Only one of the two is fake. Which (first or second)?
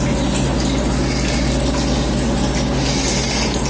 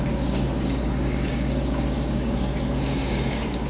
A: second